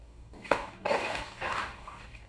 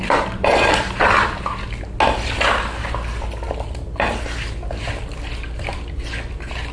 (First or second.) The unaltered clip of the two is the second